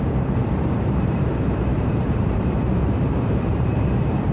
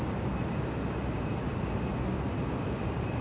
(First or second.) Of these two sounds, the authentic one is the second